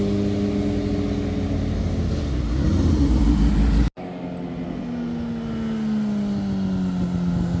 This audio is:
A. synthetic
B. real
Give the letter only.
B